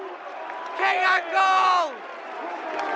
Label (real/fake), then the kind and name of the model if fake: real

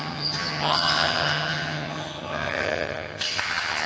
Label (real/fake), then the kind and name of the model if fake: fake, vocoder, HiFi-GAN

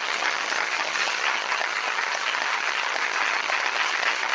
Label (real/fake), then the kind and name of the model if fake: fake, vocoder, HiFi-GAN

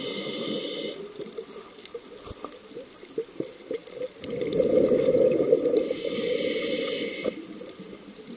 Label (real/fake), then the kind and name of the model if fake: real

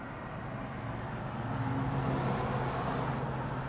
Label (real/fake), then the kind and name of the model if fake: real